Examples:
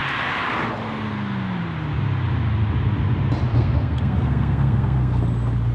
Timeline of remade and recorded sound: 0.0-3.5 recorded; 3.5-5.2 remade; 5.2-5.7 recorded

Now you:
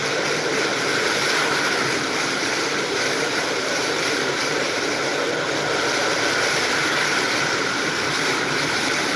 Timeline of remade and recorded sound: 0.0-2.4 recorded; 2.4-5.1 remade; 5.1-7.3 recorded; 7.3-9.2 remade

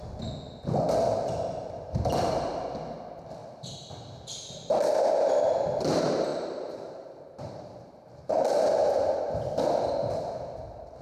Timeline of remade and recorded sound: 0.0-6.3 recorded; 6.3-7.9 remade; 7.9-11.0 recorded

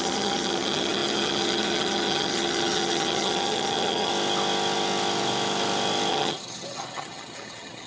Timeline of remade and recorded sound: 0.0-4.1 remade; 4.1-6.1 recorded; 6.1-7.9 remade

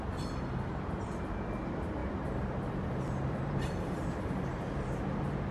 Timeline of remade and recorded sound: 0.0-2.0 recorded; 2.0-5.0 remade; 5.0-5.5 recorded

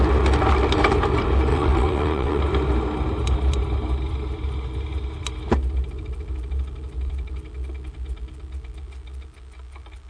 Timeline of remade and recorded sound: 0.0-1.5 recorded; 1.5-2.4 remade; 2.4-10.1 recorded

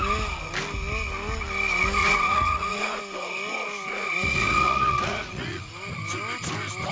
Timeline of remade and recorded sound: 0.0-2.0 recorded; 2.0-3.0 remade; 3.0-3.9 recorded; 3.9-5.7 remade; 5.7-6.9 recorded